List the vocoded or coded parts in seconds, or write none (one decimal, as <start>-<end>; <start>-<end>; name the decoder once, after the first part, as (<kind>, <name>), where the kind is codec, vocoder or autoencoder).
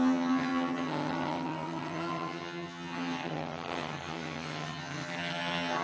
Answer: 0.0-5.8 (vocoder, HiFi-GAN)